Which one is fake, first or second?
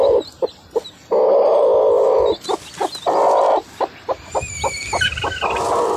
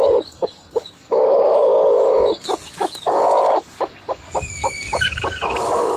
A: second